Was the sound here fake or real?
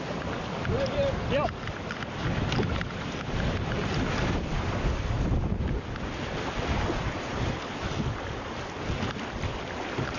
fake